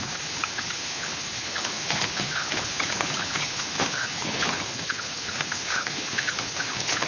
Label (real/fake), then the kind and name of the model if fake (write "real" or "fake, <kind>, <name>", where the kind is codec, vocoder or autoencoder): fake, codec, HILCodec